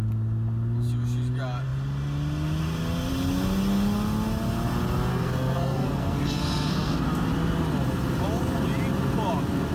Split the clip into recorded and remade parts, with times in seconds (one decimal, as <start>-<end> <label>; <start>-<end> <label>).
0.0-5.1 recorded; 5.1-7.3 remade; 7.3-9.7 recorded